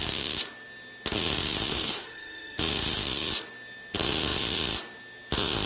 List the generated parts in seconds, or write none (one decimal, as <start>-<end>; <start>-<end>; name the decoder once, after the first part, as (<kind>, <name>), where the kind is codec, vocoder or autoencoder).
1.7-2.6 (autoencoder, DAC-VAE)